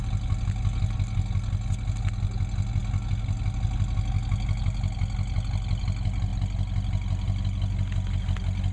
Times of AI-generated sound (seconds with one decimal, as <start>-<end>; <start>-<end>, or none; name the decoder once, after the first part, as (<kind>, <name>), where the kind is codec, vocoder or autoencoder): none